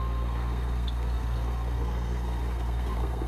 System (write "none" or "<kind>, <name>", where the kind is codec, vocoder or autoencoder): codec, SNAC